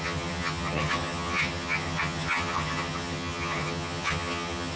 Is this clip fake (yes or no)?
yes